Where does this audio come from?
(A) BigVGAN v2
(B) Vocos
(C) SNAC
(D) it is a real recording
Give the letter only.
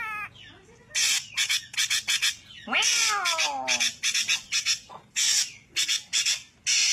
D